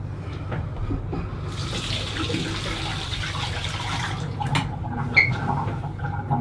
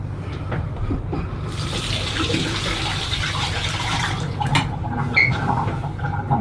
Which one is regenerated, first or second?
second